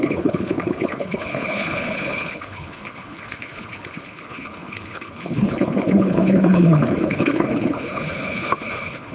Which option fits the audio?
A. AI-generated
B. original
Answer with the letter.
A